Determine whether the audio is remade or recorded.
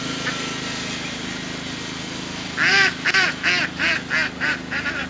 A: recorded